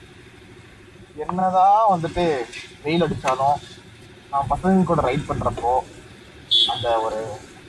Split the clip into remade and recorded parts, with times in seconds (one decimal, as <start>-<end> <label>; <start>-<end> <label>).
0.0-7.7 recorded